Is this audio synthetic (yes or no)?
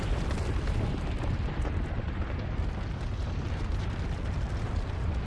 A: no